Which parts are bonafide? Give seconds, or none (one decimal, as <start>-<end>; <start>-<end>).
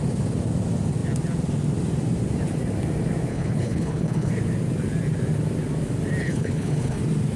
0.0-3.3; 4.3-6.2; 7.0-7.4